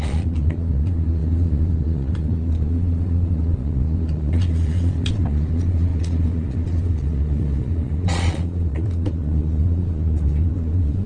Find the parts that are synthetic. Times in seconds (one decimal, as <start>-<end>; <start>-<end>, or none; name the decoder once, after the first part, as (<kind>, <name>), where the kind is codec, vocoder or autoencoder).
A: 0.0-11.1 (vocoder, Vocos)